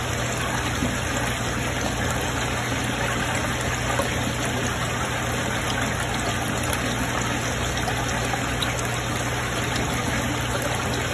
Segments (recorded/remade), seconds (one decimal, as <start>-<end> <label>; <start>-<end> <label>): 0.0-11.1 recorded